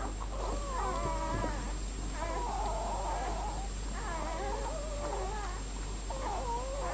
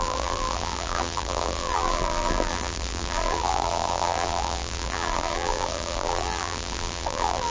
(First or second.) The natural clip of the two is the first